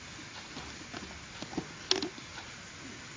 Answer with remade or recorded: recorded